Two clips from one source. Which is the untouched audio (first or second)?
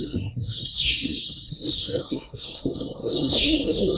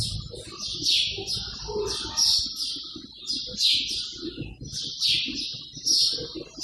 second